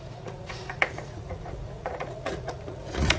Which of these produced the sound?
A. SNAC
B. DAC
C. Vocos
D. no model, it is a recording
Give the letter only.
C